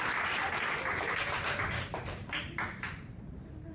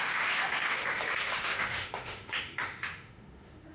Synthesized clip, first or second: second